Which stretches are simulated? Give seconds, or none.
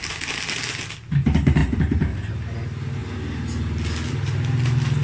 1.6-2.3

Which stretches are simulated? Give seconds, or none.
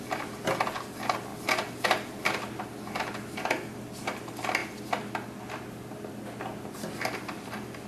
none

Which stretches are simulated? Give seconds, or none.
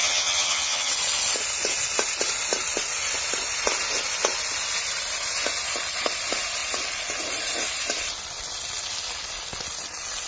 0.0-0.9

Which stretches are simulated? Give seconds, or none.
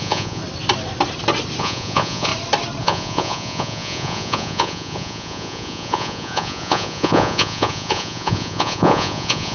0.0-0.4; 1.6-2.3; 2.8-9.5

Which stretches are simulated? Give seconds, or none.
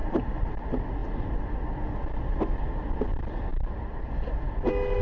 0.0-0.6; 3.5-4.1